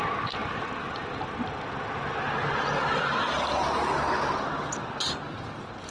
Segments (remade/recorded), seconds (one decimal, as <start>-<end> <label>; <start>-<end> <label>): 0.0-0.4 recorded; 0.4-1.2 remade; 1.2-5.9 recorded